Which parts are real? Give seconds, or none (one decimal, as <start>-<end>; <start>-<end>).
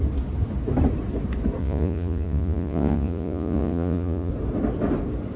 0.0-1.6; 4.3-5.4